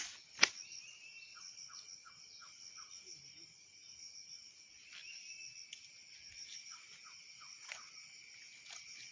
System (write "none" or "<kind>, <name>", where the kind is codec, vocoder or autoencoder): none